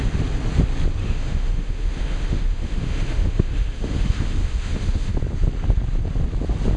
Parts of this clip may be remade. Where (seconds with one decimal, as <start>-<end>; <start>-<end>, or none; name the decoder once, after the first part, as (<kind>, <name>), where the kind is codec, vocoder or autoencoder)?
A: 1.0-5.1 (autoencoder, DAC-VAE)